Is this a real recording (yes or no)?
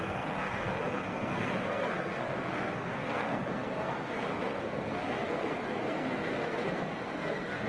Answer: no